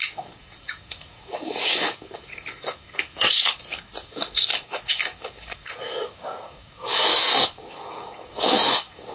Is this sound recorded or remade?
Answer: remade